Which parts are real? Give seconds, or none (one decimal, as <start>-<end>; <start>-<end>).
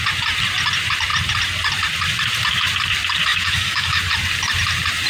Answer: 0.0-3.3; 4.0-5.1